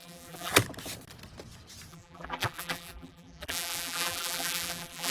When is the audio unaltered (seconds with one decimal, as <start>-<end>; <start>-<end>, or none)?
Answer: 0.5-1.9